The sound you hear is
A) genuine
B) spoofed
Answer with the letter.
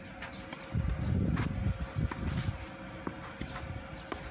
A